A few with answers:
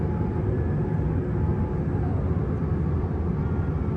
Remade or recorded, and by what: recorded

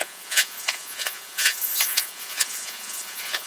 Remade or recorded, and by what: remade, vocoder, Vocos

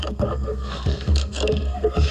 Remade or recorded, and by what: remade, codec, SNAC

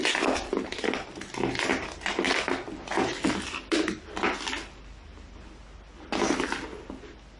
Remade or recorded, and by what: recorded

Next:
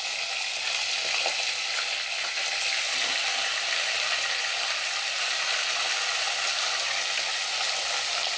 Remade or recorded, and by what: recorded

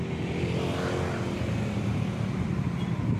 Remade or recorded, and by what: recorded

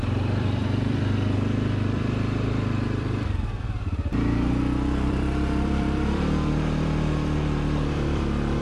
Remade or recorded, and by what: remade, vocoder, BigVGAN v2